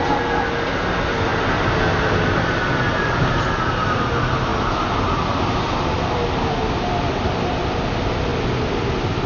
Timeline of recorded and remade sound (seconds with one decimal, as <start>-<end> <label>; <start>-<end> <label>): 0.0-9.3 recorded